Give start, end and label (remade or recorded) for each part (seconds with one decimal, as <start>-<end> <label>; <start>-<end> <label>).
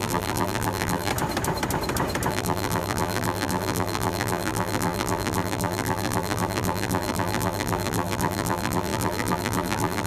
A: 0.0-1.1 remade; 1.1-2.3 recorded; 2.3-10.1 remade